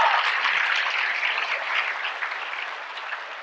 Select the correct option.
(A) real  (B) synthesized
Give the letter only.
A